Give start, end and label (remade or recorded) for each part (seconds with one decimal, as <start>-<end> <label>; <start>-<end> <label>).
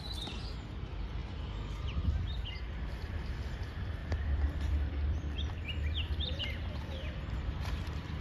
0.0-4.0 recorded; 4.0-8.2 remade